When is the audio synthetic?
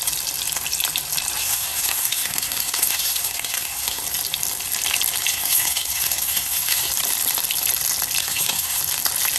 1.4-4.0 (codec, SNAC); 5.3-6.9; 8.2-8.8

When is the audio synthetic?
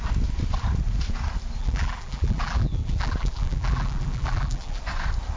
1.6-4.8 (vocoder, BigVGAN v2)